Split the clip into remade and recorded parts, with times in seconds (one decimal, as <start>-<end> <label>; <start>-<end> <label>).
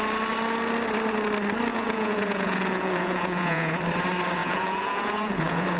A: 0.0-1.7 recorded; 1.7-3.8 remade; 3.8-4.4 recorded; 4.4-5.8 remade